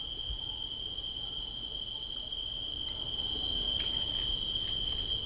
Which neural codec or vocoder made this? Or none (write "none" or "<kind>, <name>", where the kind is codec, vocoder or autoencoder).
none